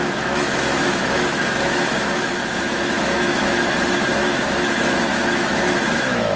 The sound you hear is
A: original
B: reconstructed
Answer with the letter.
B